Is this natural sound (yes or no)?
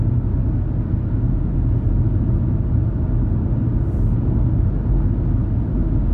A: yes